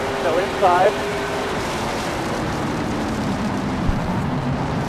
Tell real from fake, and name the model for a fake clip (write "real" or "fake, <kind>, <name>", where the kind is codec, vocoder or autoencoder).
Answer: fake, vocoder, BigVGAN v2